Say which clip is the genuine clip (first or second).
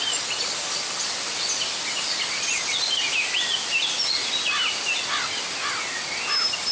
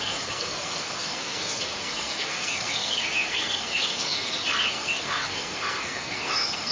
first